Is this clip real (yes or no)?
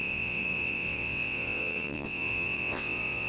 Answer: no